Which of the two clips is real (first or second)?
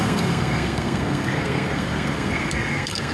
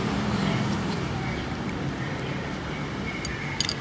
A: second